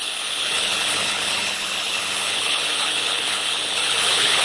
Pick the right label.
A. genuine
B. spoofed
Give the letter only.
B